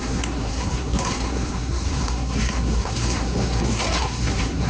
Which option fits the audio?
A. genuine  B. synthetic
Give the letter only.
B